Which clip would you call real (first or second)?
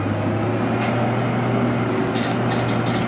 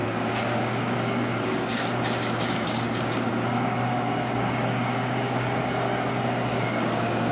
first